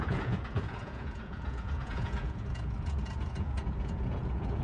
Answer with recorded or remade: remade